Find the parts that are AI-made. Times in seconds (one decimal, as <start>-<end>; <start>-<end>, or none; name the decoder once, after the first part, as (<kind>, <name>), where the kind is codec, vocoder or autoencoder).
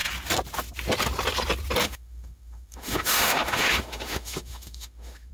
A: 1.8-5.3 (autoencoder, DAC-VAE)